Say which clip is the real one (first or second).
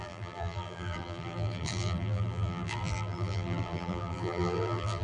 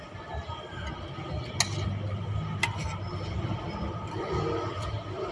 second